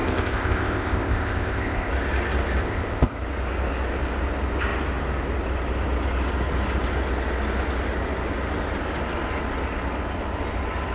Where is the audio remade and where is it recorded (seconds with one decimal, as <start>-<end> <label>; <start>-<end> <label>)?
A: 0.0-1.9 remade; 1.9-2.6 recorded; 2.6-3.2 remade; 3.2-10.9 recorded